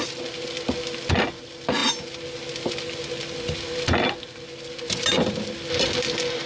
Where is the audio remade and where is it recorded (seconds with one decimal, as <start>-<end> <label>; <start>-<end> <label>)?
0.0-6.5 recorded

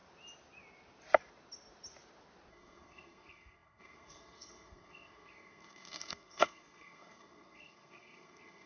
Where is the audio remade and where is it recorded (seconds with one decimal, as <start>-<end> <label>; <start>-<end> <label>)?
0.0-2.5 recorded; 2.5-8.7 remade

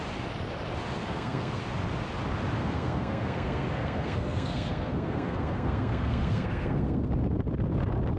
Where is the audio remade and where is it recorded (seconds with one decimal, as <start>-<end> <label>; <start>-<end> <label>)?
0.0-1.0 recorded; 1.0-1.6 remade; 1.6-2.6 recorded; 2.6-7.1 remade; 7.1-8.2 recorded